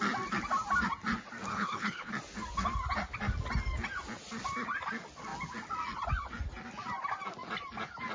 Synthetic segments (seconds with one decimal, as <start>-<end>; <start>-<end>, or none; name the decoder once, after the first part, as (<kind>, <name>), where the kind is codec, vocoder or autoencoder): 1.5-2.1 (codec, HILCodec)